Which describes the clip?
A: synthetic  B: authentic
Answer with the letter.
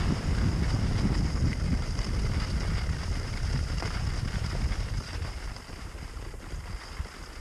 B